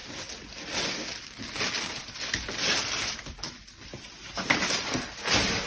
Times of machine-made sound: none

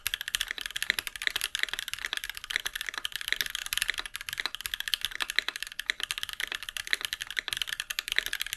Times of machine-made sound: none

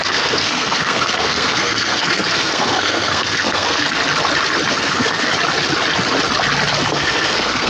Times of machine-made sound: 0.0-4.0 (codec, SNAC); 4.7-5.3; 6.9-7.7

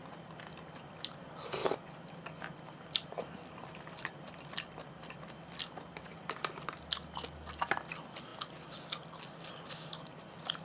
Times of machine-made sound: 1.6-6.5 (vocoder, BigVGAN v2)

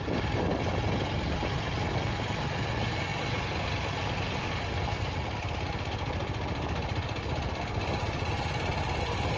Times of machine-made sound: none

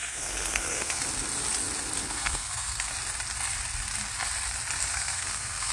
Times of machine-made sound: 0.0-1.0 (codec, SNAC); 2.0-2.9; 4.9-5.7

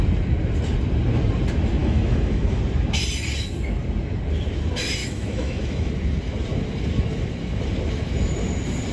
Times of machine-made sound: 1.8-2.6 (autoencoder, DAC-VAE); 5.0-5.9